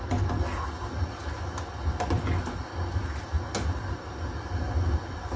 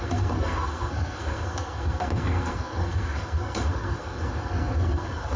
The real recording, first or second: first